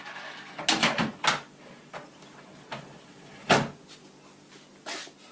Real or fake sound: real